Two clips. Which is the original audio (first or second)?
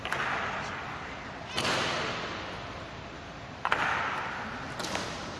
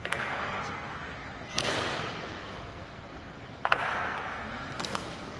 first